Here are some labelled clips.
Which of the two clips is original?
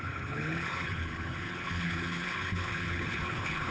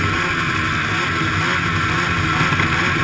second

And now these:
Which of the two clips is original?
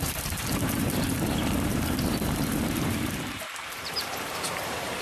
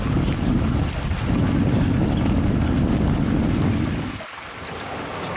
second